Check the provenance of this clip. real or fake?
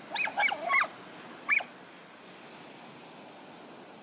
real